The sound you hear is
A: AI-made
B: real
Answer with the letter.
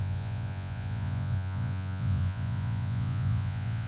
A